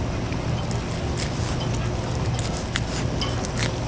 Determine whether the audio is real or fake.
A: real